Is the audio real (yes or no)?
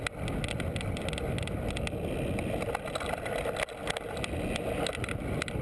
yes